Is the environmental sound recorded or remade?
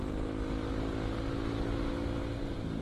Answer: recorded